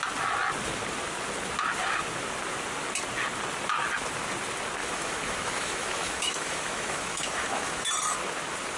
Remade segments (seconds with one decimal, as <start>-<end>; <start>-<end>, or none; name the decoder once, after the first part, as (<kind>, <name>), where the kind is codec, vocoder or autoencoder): 4.8-7.9 (autoencoder, DAC-VAE)